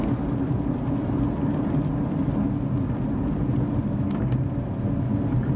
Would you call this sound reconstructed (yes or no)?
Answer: no